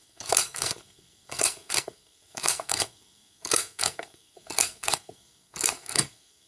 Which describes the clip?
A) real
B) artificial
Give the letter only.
B